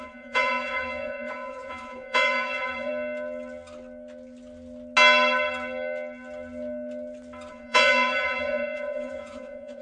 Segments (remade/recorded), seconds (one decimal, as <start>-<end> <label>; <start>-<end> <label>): 0.0-2.9 remade; 2.9-7.5 recorded; 7.5-9.8 remade